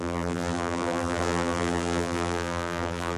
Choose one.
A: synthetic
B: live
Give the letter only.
A